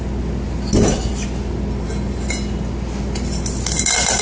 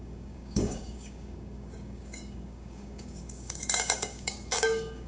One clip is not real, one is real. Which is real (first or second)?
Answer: first